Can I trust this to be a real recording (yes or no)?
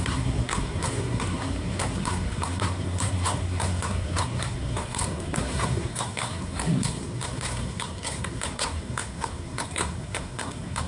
no